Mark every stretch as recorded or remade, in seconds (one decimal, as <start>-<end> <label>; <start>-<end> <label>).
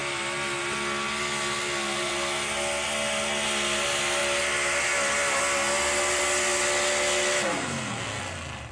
0.0-7.5 recorded; 7.5-8.2 remade; 8.2-8.7 recorded